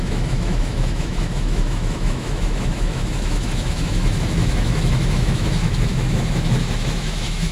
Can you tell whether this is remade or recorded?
remade